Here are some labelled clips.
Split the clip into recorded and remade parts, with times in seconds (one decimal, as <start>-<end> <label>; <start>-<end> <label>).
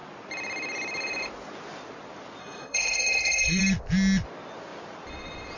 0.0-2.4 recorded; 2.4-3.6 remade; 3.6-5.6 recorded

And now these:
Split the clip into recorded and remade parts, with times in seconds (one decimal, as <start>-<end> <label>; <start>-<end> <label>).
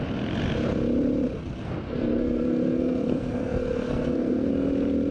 0.0-1.4 recorded; 1.4-4.5 remade; 4.5-5.1 recorded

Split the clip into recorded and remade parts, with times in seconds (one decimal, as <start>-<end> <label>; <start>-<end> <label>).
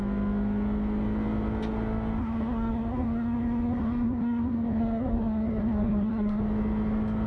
0.0-2.2 recorded; 2.2-6.4 remade; 6.4-7.3 recorded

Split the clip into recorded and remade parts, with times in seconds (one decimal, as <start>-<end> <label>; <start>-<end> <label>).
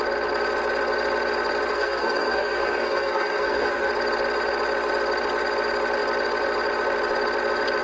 0.0-1.7 recorded; 1.7-3.9 remade; 3.9-7.8 recorded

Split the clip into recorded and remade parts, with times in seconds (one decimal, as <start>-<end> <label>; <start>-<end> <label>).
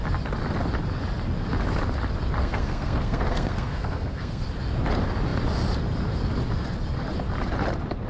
0.0-2.4 recorded; 2.4-4.4 remade; 4.4-8.1 recorded